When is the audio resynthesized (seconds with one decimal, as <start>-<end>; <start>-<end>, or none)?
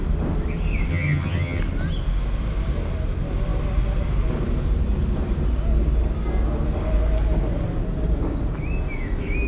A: 0.9-1.6